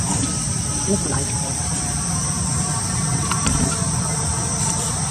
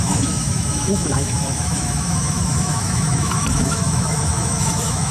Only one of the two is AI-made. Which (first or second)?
second